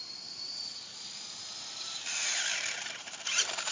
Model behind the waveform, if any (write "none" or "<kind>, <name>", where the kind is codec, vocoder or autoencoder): vocoder, BigVGAN v2